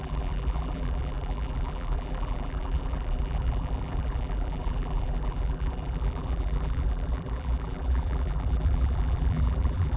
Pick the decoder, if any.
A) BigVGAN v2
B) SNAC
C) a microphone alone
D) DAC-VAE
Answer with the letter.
A